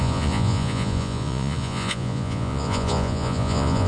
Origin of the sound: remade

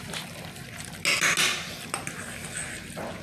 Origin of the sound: recorded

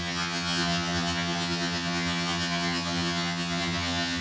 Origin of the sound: remade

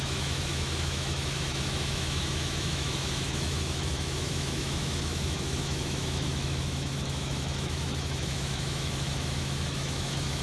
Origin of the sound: remade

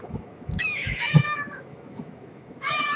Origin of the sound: remade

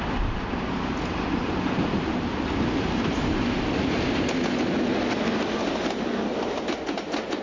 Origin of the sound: recorded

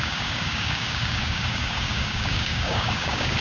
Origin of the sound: remade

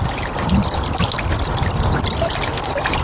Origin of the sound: recorded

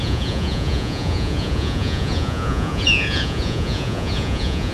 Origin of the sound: remade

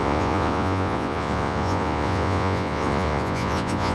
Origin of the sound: remade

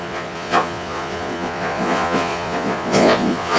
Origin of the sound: remade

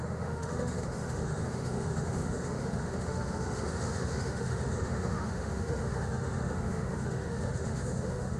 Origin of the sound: remade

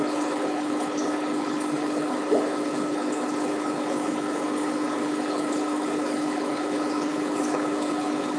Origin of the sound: remade